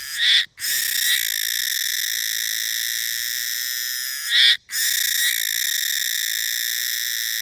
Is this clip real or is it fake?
real